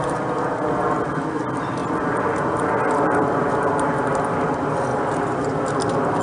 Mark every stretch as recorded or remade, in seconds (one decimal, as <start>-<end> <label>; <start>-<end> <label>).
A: 0.0-6.2 recorded